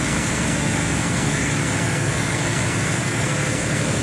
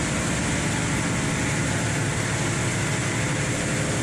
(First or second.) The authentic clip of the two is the second